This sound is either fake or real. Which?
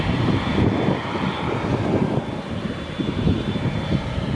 real